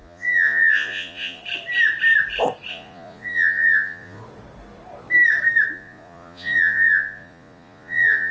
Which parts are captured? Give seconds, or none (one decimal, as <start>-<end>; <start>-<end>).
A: 1.4-2.7; 4.2-5.7